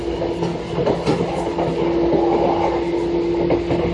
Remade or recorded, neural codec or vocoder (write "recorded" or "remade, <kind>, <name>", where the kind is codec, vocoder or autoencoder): recorded